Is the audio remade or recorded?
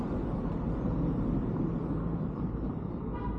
recorded